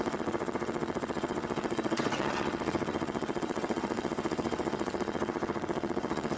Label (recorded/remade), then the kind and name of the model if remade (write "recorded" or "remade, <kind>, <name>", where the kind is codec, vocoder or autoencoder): remade, vocoder, WaveNeXt